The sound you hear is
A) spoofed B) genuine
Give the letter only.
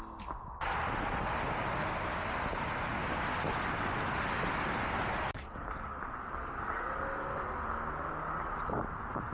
B